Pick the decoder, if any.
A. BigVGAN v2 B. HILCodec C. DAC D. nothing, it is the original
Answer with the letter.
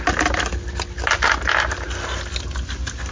D